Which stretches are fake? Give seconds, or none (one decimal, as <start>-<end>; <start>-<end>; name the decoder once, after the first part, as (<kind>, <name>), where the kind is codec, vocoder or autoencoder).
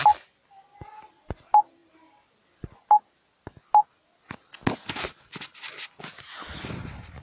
none